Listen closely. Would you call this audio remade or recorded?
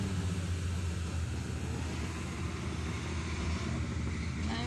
recorded